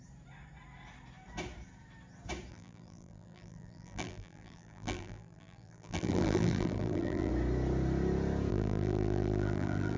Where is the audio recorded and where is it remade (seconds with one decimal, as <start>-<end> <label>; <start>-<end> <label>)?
0.0-2.5 recorded; 2.5-7.3 remade; 7.3-8.5 recorded; 8.5-10.0 remade